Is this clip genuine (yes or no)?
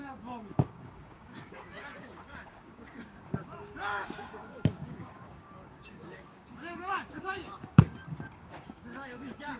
no